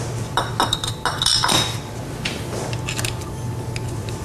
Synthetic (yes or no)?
no